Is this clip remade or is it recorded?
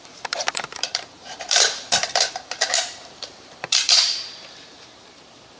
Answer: remade